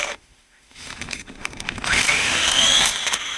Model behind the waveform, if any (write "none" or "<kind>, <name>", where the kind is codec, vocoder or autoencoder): autoencoder, DAC-VAE